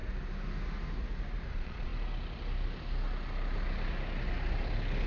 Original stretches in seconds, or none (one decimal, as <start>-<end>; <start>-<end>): 0.0-1.5; 1.9-5.1